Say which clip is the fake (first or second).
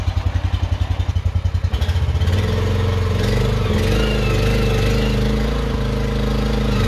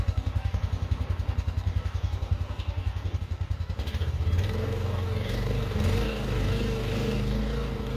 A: second